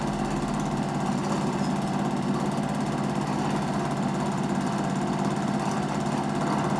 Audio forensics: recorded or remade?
recorded